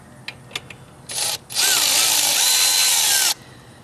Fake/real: real